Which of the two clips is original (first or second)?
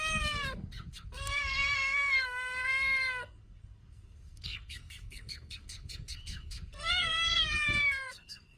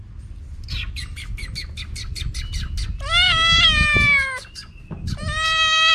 second